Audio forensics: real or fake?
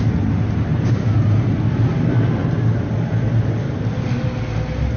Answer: real